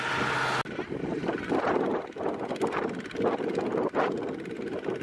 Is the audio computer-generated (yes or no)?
no